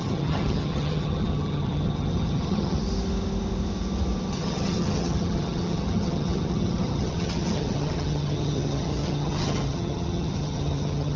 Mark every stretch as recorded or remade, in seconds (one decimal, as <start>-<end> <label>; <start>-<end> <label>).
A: 0.0-2.8 remade; 2.8-4.3 recorded; 4.3-11.2 remade